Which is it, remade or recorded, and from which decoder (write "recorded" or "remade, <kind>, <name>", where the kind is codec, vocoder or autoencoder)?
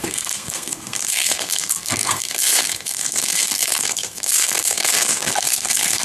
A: remade, codec, SNAC